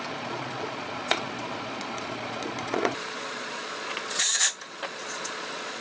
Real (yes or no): no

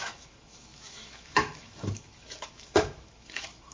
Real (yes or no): no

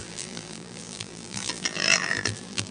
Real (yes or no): no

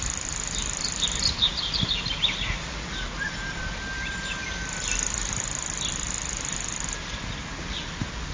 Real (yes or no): yes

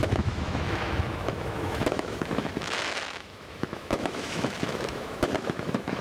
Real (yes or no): no